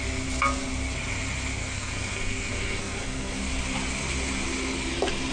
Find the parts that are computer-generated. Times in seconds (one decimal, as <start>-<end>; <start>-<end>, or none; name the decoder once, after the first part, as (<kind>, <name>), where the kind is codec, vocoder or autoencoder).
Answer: 1.6-3.4 (codec, SNAC)